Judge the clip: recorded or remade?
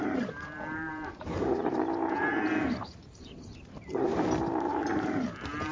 remade